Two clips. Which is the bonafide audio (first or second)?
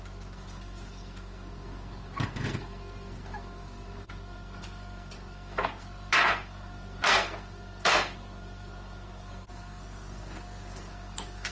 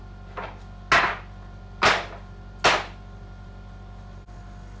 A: second